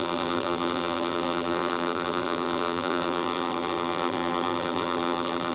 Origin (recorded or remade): remade